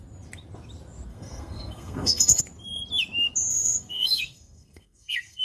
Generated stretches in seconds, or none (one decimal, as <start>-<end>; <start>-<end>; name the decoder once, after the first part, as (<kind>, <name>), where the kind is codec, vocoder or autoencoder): 1.1-2.4 (codec, SNAC); 3.5-5.4